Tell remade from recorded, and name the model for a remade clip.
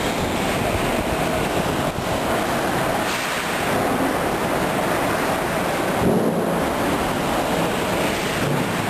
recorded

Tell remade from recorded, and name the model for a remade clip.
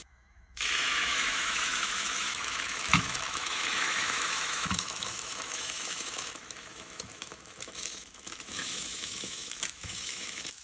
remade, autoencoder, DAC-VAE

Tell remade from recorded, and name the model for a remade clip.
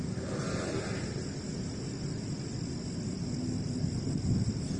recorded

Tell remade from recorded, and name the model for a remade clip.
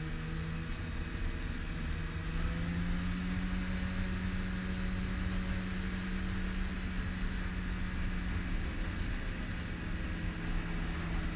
recorded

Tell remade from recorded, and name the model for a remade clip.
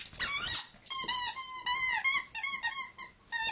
recorded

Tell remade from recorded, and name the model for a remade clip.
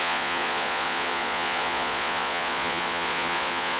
remade, vocoder, Vocos